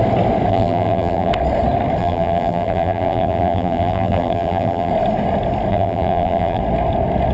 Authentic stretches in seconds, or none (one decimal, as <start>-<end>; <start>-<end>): 0.0-0.5; 1.3-2.0; 4.9-5.7; 6.6-7.3